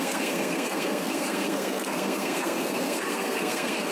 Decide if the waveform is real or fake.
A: fake